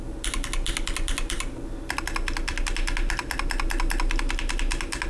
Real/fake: real